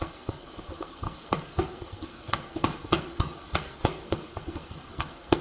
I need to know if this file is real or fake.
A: fake